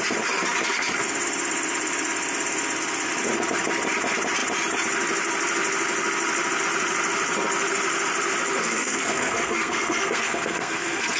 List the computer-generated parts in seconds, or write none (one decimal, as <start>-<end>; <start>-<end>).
8.6-11.2